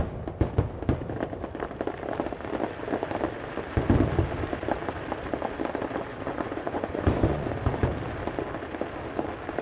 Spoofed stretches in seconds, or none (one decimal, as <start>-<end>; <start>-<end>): 6.1-7.5